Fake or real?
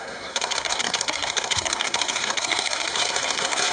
fake